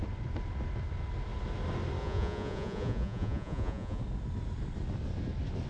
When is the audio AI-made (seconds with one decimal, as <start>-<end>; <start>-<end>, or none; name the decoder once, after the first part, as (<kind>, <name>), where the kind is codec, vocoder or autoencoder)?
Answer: 2.0-4.0 (vocoder, Vocos)